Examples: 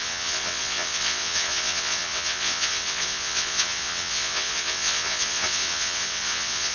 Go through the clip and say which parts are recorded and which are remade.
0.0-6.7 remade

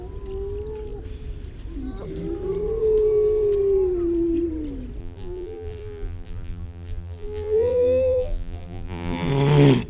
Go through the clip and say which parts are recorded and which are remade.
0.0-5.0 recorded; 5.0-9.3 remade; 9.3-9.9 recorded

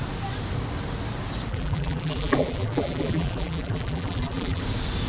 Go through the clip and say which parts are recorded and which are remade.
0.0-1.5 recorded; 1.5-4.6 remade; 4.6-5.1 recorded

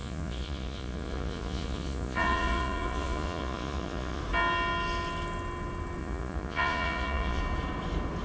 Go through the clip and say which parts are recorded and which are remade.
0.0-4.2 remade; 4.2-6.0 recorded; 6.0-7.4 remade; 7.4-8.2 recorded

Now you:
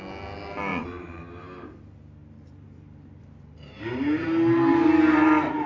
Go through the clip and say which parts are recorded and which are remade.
0.0-0.7 recorded; 0.7-1.2 remade; 1.2-2.2 recorded; 2.2-5.7 remade

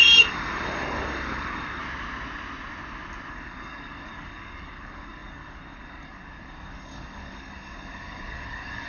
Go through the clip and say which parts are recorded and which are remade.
0.0-1.8 remade; 1.8-3.3 recorded; 3.3-8.9 remade

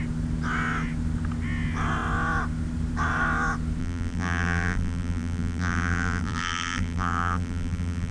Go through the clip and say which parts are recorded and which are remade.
0.0-3.8 recorded; 3.8-8.1 remade